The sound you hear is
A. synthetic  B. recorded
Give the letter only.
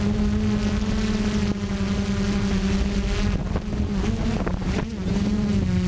B